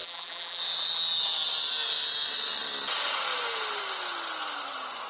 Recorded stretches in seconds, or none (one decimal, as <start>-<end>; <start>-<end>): 0.6-5.1